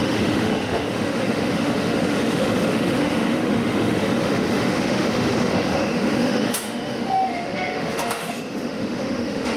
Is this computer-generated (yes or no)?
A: yes